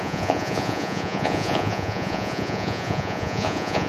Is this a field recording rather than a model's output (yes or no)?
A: no